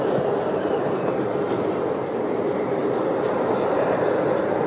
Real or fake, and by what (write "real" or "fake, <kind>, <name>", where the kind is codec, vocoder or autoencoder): real